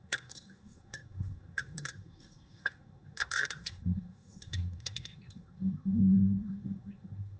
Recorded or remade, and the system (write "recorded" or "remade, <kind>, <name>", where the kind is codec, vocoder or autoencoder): remade, codec, SNAC